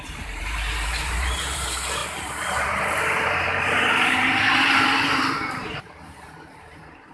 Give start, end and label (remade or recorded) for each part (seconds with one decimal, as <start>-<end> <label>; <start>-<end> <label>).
0.0-7.1 remade